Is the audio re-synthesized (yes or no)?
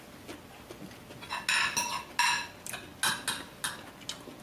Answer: no